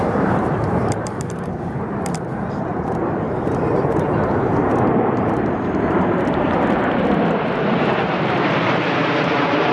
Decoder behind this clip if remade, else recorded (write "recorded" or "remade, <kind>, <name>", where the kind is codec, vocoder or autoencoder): remade, vocoder, BigVGAN v2